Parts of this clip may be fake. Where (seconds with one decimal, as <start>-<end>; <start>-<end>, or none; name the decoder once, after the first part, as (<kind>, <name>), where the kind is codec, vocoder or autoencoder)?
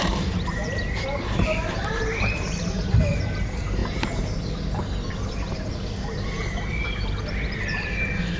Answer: 0.0-3.8 (vocoder, BigVGAN v2); 6.7-8.4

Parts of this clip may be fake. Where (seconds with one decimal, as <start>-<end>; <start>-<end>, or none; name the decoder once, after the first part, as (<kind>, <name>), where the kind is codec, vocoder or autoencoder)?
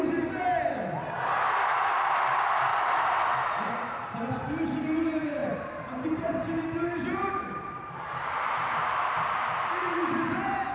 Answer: 2.7-4.2 (vocoder, BigVGAN v2); 5.4-9.3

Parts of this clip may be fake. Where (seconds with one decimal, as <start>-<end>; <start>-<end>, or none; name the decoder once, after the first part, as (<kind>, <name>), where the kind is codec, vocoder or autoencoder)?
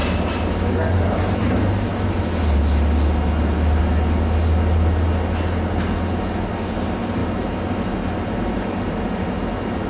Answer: 0.7-1.9 (vocoder, BigVGAN v2); 6.7-9.9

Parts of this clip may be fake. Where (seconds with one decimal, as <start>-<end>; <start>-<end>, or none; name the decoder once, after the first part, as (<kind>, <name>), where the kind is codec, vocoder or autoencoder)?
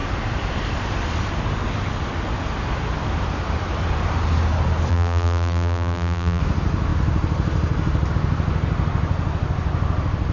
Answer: 4.9-6.4 (vocoder, BigVGAN v2)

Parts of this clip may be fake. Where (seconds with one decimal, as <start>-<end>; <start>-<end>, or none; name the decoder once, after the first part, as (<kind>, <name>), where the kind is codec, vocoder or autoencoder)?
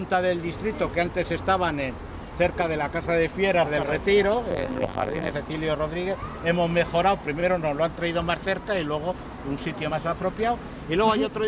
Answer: 4.5-5.3 (vocoder, BigVGAN v2)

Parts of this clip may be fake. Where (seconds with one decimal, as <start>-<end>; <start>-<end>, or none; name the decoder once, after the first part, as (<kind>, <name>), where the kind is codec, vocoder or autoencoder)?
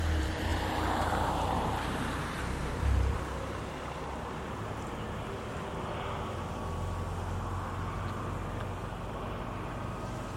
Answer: 0.5-4.1 (vocoder, BigVGAN v2)